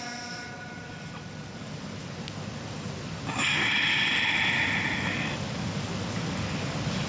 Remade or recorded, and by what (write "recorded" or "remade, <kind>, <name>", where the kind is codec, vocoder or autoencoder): recorded